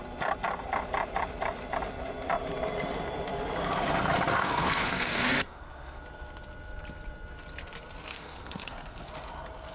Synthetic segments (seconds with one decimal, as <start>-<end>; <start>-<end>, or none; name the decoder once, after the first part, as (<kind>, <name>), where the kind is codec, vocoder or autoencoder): 4.3-6.0 (codec, SNAC); 8.1-9.1